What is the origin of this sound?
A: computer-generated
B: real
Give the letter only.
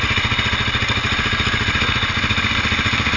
B